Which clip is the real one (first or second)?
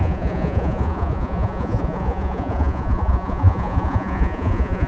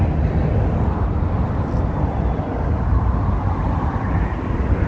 second